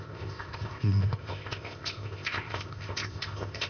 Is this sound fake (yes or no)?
yes